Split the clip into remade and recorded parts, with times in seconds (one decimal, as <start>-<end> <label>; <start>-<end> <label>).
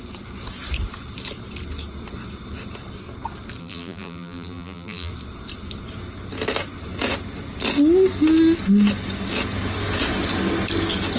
0.0-3.6 recorded; 3.6-5.1 remade; 5.1-11.2 recorded